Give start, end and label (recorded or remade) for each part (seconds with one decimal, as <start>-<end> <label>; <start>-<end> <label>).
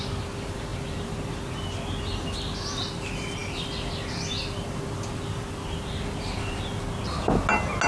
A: 0.0-7.9 recorded